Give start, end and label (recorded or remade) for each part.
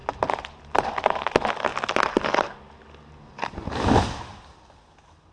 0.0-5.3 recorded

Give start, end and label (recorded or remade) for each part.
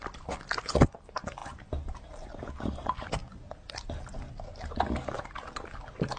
0.0-6.2 recorded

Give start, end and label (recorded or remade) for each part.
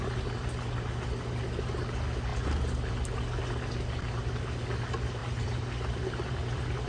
0.0-6.9 recorded